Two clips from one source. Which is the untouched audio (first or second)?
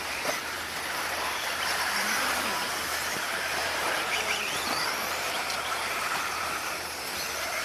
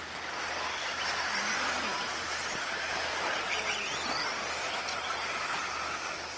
second